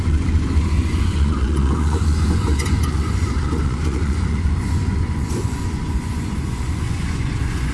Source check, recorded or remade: remade